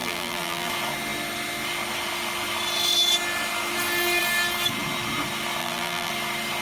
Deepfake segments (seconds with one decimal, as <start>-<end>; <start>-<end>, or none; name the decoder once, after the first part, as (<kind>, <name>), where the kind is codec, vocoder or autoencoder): 0.0-0.7 (vocoder, BigVGAN v2); 5.6-6.1